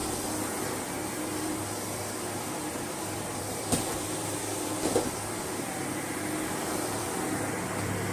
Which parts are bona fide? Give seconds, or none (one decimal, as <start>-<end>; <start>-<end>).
0.0-0.5